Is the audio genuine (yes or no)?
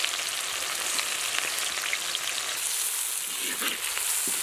yes